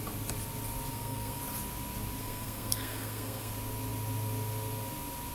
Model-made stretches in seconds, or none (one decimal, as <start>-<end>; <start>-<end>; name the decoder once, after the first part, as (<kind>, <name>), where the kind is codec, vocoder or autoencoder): 0.9-1.4 (codec, SNAC); 2.2-3.5